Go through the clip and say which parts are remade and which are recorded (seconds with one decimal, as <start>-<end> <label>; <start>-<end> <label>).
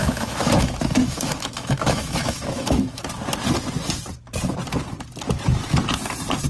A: 0.0-3.0 remade; 3.0-6.5 recorded